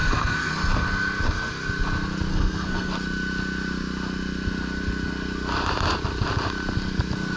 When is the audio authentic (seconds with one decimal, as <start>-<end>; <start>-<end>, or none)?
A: 0.5-2.3; 2.9-7.4